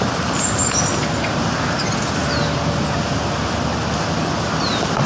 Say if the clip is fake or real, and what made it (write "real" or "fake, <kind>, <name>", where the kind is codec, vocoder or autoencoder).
real